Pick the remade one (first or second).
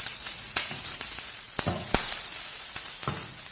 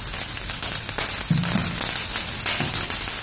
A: first